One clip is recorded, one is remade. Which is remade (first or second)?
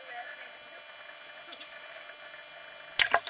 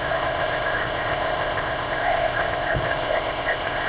second